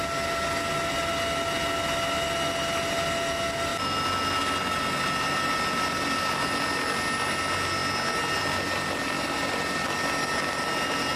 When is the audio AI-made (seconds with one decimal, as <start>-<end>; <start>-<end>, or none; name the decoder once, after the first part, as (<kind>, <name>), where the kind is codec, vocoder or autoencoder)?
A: none